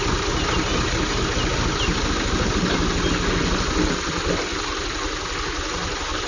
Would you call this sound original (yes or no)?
yes